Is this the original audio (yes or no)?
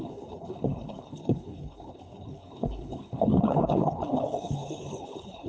no